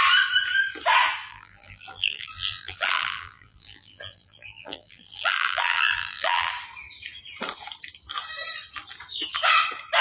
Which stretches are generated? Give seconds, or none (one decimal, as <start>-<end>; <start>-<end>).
1.3-6.5